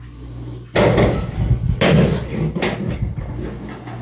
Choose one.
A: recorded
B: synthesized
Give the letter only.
A